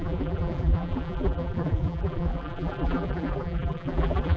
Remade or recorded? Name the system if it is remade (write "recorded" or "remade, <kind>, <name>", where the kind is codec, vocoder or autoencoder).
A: remade, vocoder, BigVGAN v2